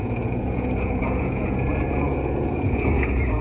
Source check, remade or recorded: remade